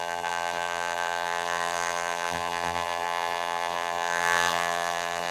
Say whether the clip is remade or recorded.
remade